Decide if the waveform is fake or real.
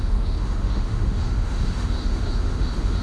fake